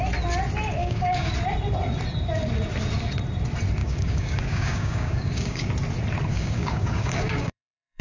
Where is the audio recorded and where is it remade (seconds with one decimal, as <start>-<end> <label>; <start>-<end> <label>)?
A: 0.0-0.8 recorded; 0.8-1.3 remade; 1.3-3.8 recorded; 3.8-5.7 remade; 5.7-6.3 recorded; 6.3-8.0 remade